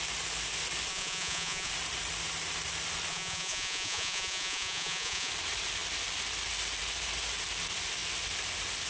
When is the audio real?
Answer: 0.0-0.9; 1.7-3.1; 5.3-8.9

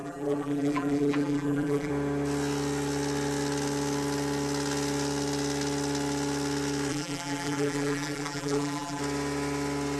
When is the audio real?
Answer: 1.9-6.9; 9.0-10.0

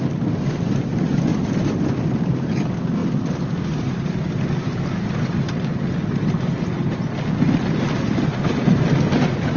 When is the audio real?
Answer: 0.0-1.3; 1.9-3.0; 3.9-9.6